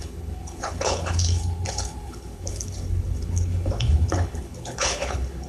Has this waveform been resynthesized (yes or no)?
yes